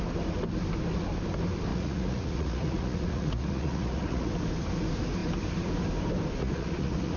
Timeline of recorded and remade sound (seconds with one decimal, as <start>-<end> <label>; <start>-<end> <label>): 0.0-1.7 recorded; 1.7-4.3 remade; 4.3-6.4 recorded; 6.4-7.2 remade